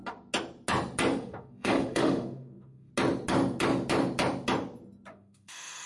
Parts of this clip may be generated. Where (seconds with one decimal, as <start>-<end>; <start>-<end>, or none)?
1.2-2.9; 5.1-5.9